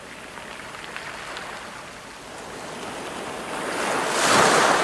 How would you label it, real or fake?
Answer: real